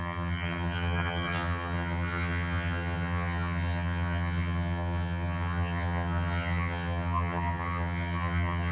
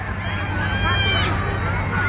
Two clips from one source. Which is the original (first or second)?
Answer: second